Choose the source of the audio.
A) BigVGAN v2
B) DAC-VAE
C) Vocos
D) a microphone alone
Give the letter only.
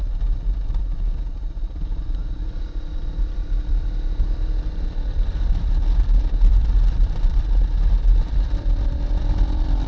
A